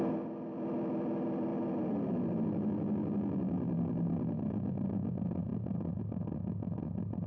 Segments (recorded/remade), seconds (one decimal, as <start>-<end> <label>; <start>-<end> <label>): 0.0-7.3 recorded